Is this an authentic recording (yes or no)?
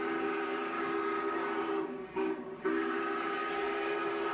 no